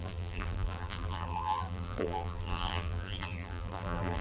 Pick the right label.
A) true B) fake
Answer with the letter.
B